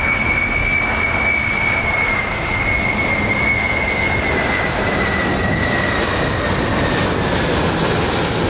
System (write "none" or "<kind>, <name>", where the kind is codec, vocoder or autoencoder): none